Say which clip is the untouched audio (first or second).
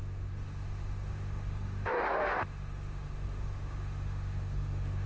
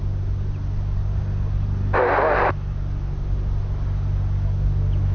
second